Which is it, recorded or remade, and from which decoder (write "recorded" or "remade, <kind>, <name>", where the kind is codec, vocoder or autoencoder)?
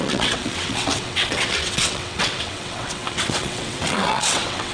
remade, vocoder, WaveNeXt